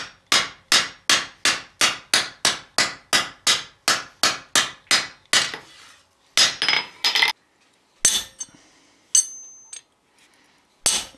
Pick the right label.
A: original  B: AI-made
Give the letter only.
A